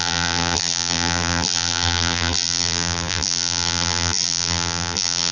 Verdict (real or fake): fake